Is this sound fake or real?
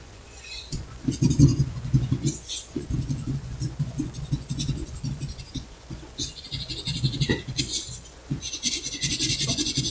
fake